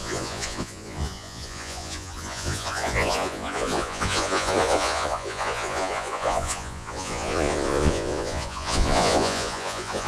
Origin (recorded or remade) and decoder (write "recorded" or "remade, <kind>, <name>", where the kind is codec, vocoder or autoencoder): remade, vocoder, Vocos